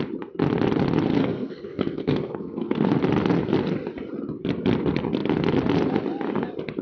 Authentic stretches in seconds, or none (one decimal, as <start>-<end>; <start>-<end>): 0.0-1.1; 3.0-6.8